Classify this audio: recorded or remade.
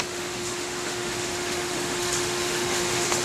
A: remade